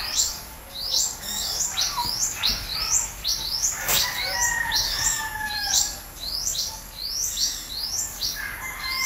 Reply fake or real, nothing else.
fake